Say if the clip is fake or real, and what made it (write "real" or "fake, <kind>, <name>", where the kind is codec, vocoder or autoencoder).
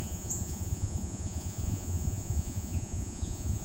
fake, vocoder, Vocos